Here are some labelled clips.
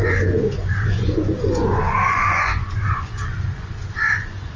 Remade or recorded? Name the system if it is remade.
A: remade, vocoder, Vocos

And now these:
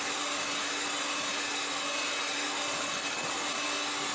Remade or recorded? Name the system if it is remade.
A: recorded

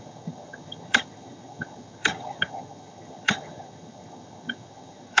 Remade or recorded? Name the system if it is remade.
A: remade, vocoder, HiFi-GAN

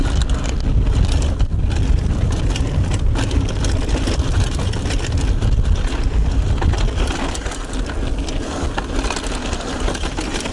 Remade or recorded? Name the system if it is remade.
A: recorded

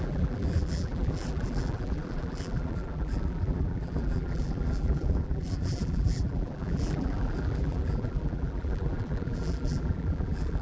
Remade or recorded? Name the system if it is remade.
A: remade, vocoder, BigVGAN v2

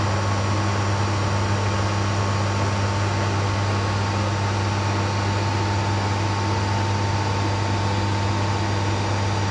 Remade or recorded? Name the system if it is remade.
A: recorded